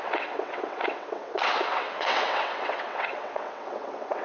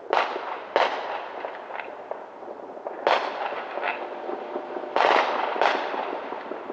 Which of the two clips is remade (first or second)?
first